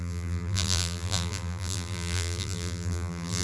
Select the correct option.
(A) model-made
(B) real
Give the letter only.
A